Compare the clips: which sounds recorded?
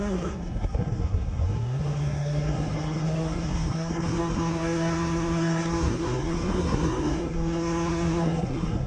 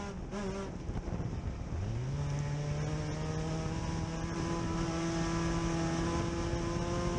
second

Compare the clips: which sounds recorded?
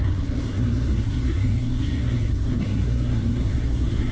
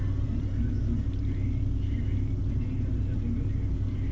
second